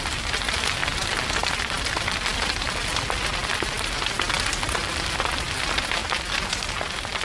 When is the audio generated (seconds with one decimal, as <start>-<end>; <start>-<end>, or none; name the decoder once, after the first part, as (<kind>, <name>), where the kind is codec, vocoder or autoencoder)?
none